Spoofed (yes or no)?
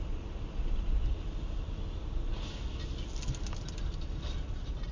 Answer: no